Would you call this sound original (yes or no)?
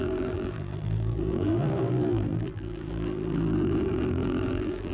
no